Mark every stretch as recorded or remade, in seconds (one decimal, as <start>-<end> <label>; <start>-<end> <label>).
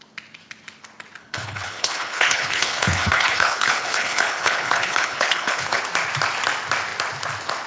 0.0-1.2 recorded; 1.2-5.8 remade; 5.8-7.7 recorded